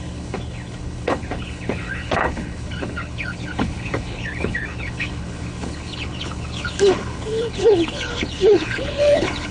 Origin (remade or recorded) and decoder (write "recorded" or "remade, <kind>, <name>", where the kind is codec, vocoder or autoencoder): remade, codec, HILCodec